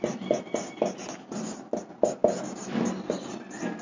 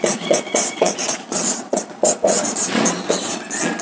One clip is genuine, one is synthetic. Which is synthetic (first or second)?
second